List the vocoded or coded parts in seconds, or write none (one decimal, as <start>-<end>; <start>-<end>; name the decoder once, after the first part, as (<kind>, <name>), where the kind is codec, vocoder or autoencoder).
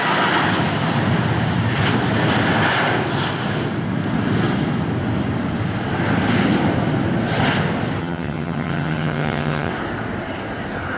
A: 8.0-9.7 (vocoder, HiFi-GAN)